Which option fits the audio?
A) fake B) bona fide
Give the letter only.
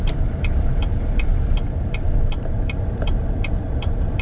A